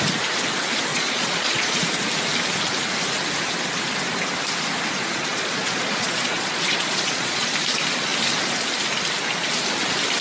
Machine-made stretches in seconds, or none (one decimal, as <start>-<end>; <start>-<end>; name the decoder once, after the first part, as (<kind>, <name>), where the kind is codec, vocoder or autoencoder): 0.9-1.8 (vocoder, Vocos); 5.3-7.5